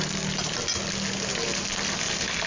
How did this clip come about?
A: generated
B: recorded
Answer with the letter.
B